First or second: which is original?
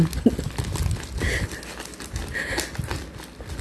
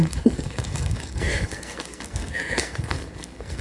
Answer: first